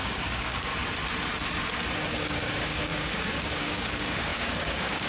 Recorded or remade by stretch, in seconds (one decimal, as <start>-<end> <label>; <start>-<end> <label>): 0.0-0.7 remade; 0.7-2.1 recorded; 2.1-5.1 remade